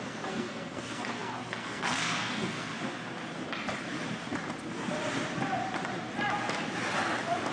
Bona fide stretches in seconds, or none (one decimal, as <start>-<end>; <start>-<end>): 2.7-7.5